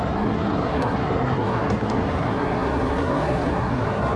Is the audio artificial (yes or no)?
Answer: yes